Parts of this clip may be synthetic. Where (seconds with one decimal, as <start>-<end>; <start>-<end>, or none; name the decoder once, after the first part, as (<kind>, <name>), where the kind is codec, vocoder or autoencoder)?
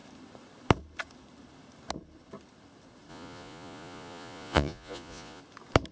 3.1-5.4 (vocoder, Vocos)